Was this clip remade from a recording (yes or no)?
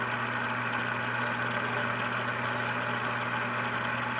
no